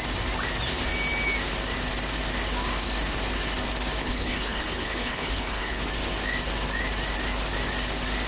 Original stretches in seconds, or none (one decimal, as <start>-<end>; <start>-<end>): 0.0-4.0; 5.8-8.3